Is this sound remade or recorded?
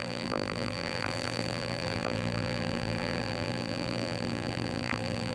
remade